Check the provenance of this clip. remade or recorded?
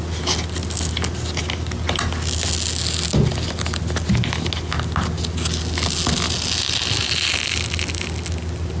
recorded